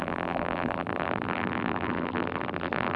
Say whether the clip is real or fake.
fake